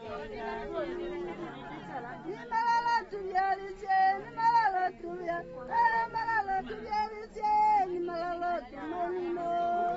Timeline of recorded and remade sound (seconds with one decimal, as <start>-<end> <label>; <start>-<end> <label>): 0.0-5.0 recorded; 5.0-6.6 remade; 6.6-10.0 recorded